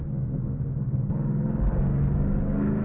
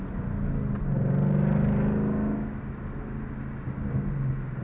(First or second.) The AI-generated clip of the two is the first